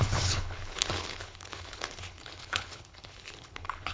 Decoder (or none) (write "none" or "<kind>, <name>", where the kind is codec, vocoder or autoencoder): codec, HILCodec